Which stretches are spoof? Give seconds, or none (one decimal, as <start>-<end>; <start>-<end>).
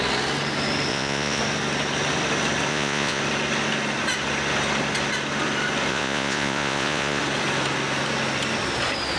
0.9-1.4; 2.7-3.2; 5.9-7.2